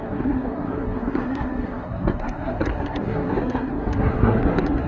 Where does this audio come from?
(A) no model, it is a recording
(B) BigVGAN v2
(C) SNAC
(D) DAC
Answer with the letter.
C